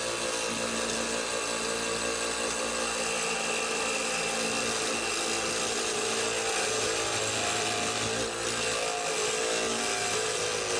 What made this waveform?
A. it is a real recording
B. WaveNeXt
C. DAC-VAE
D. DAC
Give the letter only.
A